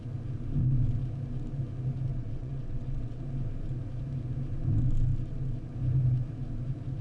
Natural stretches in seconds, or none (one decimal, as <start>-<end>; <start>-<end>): 0.0-2.1; 3.2-7.0